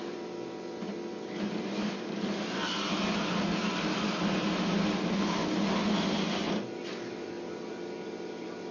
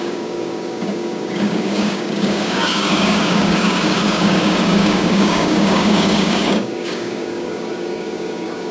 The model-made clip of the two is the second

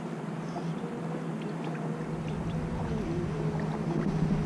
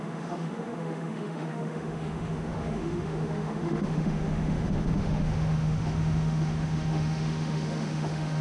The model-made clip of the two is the second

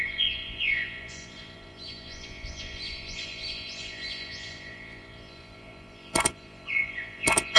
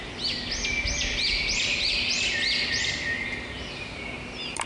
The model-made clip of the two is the first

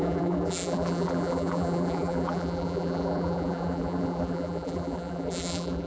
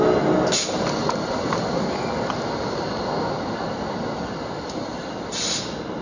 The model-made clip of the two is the first